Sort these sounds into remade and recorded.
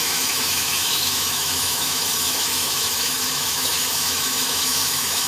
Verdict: remade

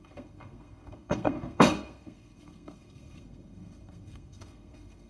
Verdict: remade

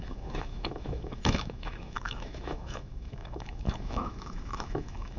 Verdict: remade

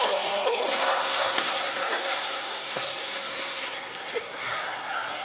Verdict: remade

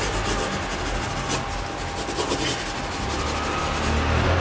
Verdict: recorded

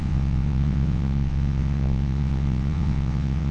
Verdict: remade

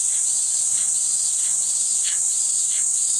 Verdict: recorded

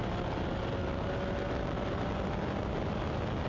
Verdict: recorded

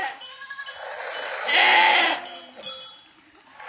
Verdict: recorded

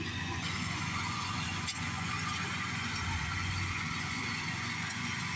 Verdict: remade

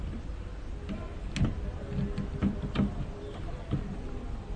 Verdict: recorded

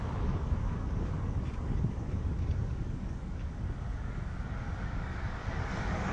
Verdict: remade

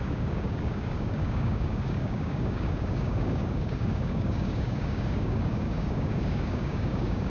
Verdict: remade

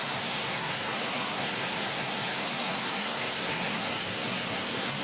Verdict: remade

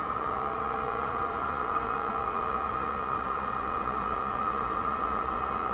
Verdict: remade